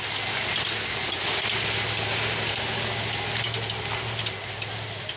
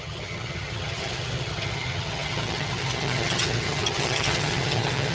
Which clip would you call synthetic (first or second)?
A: second